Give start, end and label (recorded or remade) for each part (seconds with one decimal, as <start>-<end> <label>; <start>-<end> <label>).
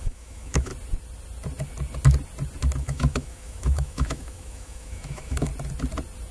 0.0-0.7 remade; 0.7-2.8 recorded; 2.8-5.5 remade; 5.5-6.3 recorded